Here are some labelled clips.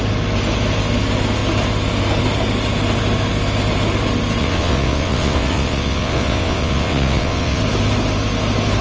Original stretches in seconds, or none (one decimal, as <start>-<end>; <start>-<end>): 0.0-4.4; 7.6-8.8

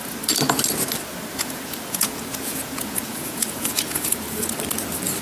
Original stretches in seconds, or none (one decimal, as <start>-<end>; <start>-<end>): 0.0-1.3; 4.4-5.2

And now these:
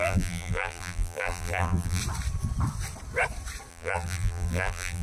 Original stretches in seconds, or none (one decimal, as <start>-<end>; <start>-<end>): 2.0-3.7

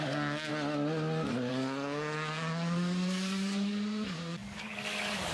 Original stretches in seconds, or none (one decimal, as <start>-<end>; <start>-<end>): 0.5-1.5